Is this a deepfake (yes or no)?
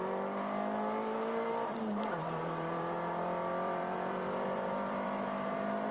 yes